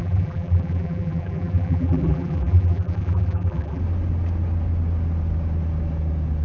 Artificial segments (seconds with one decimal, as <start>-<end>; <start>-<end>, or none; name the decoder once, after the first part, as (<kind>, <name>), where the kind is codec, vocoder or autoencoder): 0.0-3.8 (vocoder, BigVGAN v2)